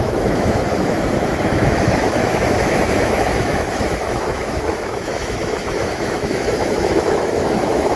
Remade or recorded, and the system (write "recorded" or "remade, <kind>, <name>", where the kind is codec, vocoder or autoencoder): remade, autoencoder, DAC-VAE